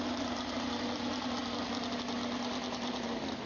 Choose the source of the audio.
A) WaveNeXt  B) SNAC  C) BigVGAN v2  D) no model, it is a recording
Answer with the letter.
D